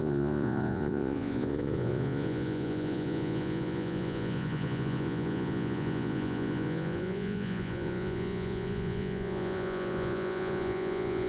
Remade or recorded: remade